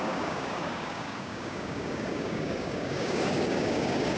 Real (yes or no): no